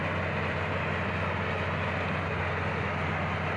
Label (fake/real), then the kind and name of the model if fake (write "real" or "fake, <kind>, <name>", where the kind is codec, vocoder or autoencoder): real